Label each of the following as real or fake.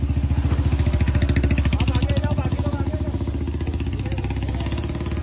real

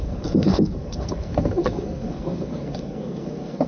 fake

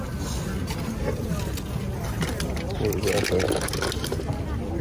real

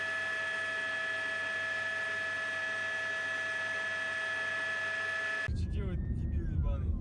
real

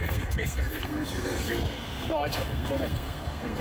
fake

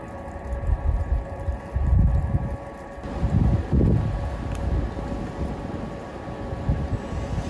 real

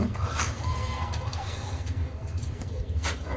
fake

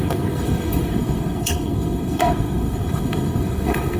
fake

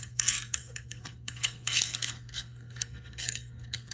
fake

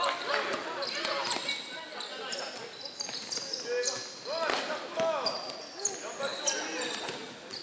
real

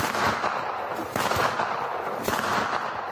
real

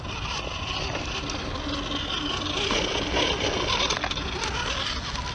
real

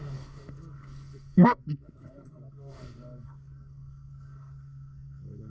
fake